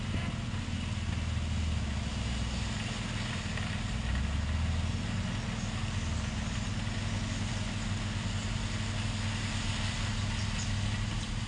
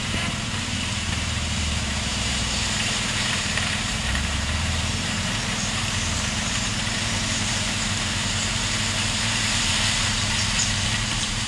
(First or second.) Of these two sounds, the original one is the first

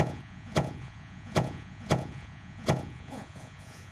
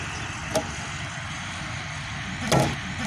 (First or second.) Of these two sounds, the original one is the second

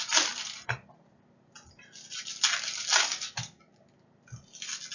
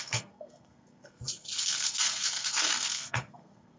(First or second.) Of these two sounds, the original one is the first